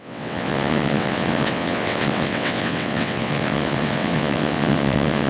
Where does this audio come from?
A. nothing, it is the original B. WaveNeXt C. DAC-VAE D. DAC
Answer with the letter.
B